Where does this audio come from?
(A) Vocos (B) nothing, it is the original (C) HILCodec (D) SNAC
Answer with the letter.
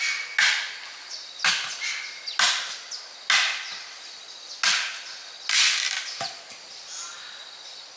B